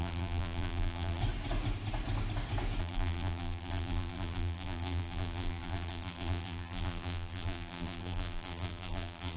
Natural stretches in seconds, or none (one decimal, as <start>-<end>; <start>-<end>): 1.2-2.8